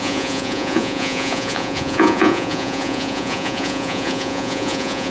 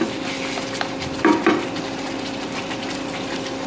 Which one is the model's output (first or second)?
first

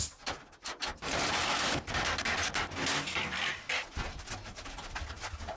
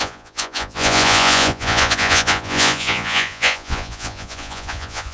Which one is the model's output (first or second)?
second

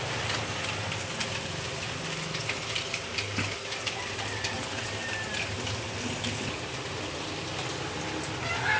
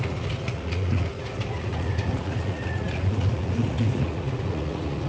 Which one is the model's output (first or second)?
second